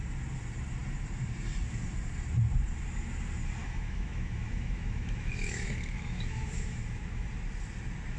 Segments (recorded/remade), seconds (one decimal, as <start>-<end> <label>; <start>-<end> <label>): 0.0-3.6 recorded; 3.6-7.3 remade; 7.3-8.2 recorded